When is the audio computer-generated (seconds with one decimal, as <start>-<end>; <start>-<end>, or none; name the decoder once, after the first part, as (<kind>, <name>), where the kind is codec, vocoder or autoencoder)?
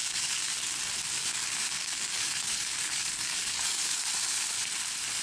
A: 0.0-0.6 (codec, DAC); 1.0-4.1